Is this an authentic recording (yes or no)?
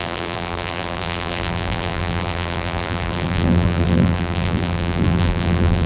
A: no